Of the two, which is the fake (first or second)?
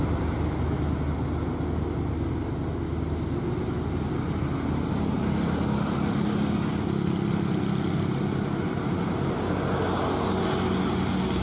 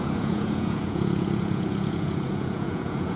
second